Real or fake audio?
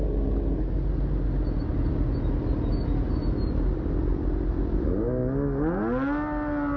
real